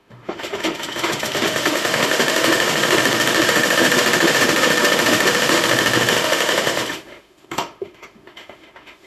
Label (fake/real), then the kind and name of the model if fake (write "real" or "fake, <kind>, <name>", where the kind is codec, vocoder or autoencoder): fake, autoencoder, DAC-VAE